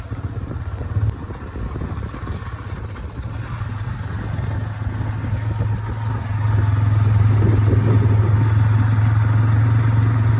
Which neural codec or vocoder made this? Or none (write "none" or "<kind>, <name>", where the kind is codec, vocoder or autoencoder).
none